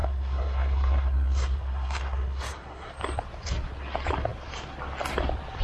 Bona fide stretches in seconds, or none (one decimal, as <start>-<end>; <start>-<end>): 2.9-5.6